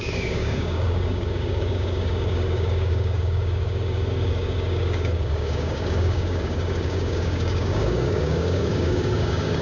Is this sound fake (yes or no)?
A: yes